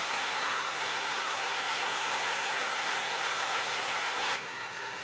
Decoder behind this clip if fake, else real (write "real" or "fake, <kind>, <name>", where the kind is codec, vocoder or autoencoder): fake, codec, SNAC